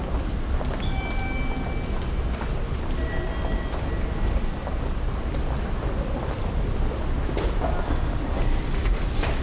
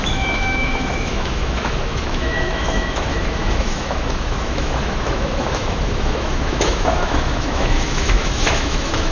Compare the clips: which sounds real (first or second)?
first